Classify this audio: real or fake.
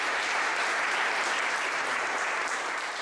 fake